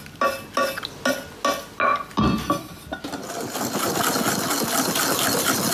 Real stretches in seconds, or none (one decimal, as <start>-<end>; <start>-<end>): 0.0-5.7